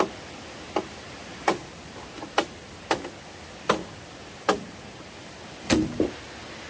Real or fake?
real